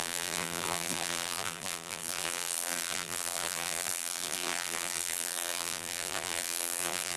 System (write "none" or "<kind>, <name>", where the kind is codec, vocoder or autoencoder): vocoder, BigVGAN v2